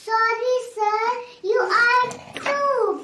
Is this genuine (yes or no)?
yes